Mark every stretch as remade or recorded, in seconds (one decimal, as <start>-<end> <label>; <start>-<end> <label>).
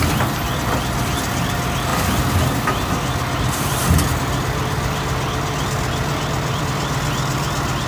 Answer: 0.0-7.9 recorded